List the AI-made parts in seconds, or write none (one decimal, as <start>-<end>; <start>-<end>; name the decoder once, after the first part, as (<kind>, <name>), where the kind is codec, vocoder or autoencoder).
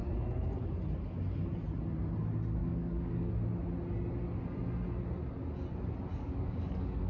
2.6-3.3 (codec, DAC); 6.1-7.1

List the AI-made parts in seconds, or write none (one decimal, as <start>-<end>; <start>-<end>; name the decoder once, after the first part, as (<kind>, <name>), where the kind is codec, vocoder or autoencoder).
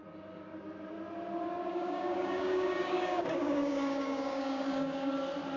1.7-5.1 (codec, DAC)